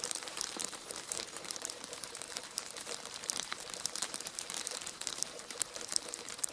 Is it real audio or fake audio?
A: fake